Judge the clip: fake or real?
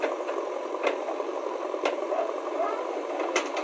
fake